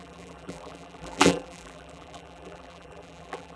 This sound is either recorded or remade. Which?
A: remade